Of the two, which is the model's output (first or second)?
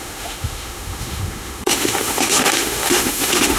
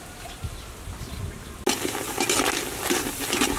first